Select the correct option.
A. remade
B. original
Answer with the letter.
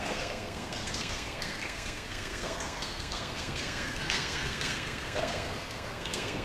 A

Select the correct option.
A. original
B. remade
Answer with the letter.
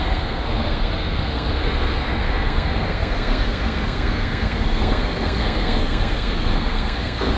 B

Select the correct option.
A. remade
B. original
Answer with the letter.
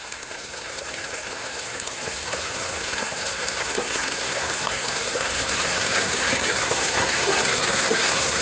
A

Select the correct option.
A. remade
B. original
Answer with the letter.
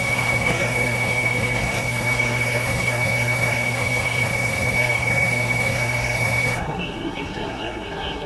A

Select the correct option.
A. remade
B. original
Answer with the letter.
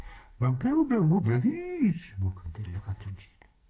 A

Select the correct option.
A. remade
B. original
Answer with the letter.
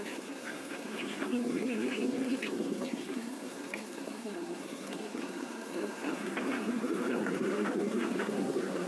A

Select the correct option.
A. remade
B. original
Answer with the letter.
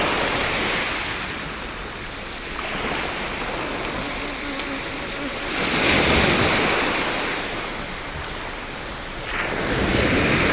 B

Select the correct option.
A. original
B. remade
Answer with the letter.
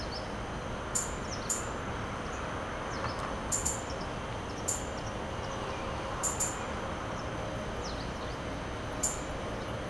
A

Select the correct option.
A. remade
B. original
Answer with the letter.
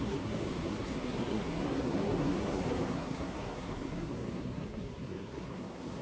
A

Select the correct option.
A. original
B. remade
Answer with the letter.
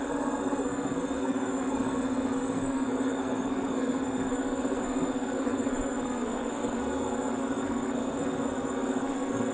B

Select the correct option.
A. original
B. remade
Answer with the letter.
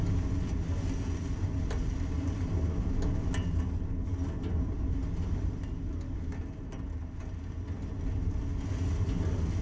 A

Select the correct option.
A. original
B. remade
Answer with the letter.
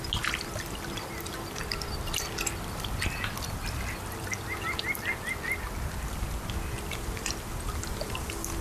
A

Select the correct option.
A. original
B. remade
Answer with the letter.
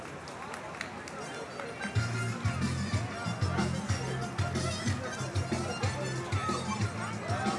A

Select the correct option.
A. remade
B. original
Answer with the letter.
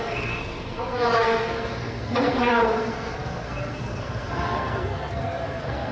A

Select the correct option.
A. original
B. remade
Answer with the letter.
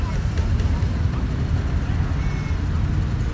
A